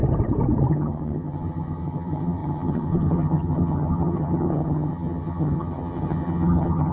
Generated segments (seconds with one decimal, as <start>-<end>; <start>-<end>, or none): 0.7-6.9